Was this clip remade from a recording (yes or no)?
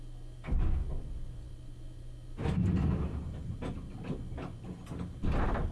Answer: no